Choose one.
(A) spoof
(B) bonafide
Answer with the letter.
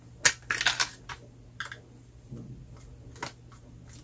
B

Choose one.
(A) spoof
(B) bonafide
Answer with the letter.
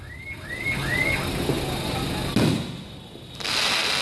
B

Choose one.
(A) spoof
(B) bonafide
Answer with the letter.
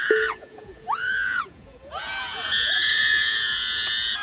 A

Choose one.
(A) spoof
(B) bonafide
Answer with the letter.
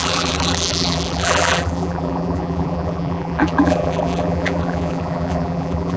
A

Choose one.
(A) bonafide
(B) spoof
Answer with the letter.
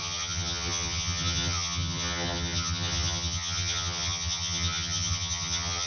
B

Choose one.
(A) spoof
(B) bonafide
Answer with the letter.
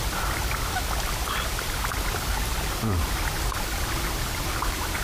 B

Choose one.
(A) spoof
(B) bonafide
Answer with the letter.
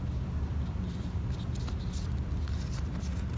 B